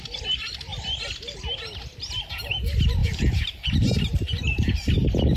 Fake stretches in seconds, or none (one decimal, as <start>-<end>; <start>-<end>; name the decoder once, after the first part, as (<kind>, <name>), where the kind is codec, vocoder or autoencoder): 0.0-0.7 (vocoder, BigVGAN v2); 2.0-5.4